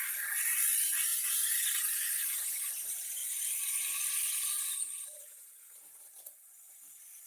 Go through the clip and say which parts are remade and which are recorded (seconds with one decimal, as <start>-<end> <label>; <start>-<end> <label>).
0.0-7.3 remade